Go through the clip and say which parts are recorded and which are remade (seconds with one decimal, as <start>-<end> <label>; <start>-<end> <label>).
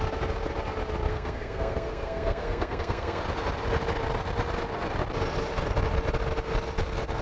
0.0-1.1 recorded; 1.1-3.2 remade; 3.2-7.2 recorded